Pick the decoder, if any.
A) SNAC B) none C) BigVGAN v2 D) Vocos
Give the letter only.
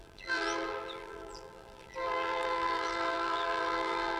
C